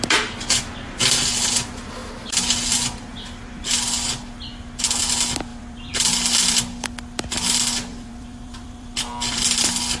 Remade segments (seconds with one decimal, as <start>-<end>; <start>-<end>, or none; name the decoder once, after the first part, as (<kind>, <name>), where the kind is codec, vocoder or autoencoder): 5.5-6.6 (vocoder, BigVGAN v2); 7.9-9.4